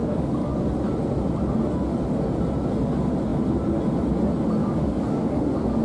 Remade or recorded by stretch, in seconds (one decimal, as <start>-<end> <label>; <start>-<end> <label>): 0.0-0.7 remade; 0.7-4.6 recorded; 4.6-5.8 remade